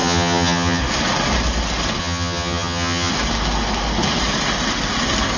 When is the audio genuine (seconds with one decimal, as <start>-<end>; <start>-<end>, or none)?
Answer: 0.8-2.0; 3.1-5.4